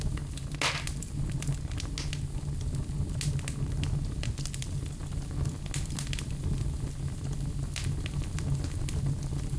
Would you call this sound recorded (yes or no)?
yes